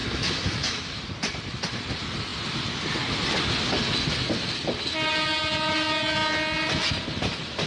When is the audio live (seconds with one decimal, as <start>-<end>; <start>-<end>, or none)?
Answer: 1.0-7.7